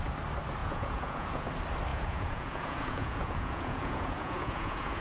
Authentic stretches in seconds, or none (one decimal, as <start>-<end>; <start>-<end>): 0.0-0.6; 1.5-1.9